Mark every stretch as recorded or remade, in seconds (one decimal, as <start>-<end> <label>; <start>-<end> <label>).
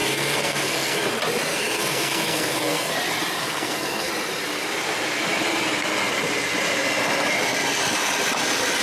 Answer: 0.0-1.1 remade; 1.1-1.5 recorded; 1.5-2.9 remade; 2.9-3.4 recorded; 3.4-4.1 remade; 4.1-8.8 recorded